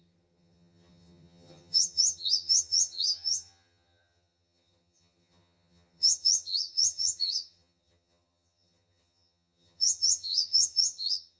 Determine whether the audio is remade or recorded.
remade